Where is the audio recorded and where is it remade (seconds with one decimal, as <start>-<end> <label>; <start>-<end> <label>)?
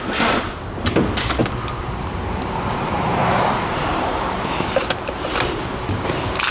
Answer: 0.0-1.4 recorded; 1.4-5.3 remade; 5.3-6.5 recorded